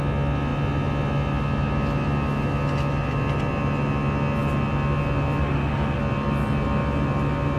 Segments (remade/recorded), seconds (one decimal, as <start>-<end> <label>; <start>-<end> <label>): 0.0-5.4 recorded; 5.4-6.0 remade; 6.0-7.6 recorded